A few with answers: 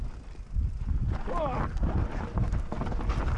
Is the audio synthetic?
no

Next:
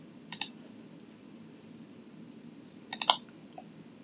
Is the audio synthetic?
no